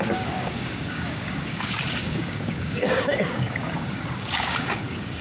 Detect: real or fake fake